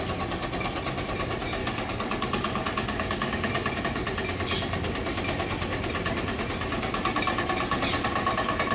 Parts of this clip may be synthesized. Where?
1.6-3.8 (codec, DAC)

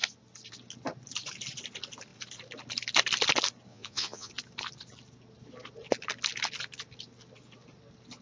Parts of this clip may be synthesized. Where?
3.7-4.3 (vocoder, Vocos)

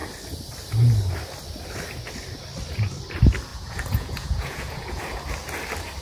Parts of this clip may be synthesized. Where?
3.5-5.0 (vocoder, Vocos)

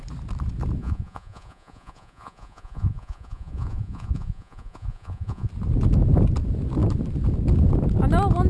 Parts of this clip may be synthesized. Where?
0.8-5.5 (vocoder, Vocos)

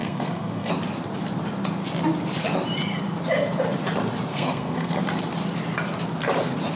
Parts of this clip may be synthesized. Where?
0.0-0.7 (codec, SNAC); 4.3-5.0

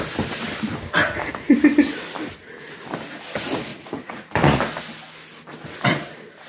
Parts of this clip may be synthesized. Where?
3.7-4.6 (vocoder, Vocos)